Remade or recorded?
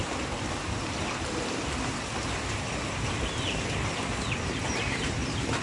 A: recorded